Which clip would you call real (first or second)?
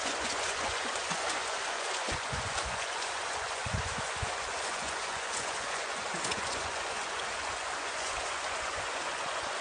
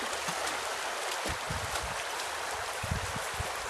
second